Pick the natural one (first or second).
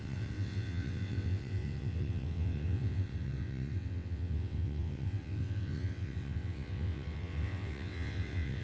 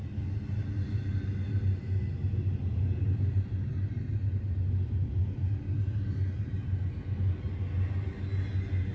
second